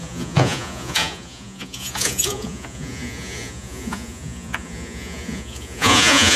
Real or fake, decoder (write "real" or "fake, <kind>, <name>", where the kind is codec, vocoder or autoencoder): fake, vocoder, Vocos